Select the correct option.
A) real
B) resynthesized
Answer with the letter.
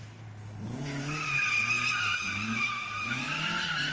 A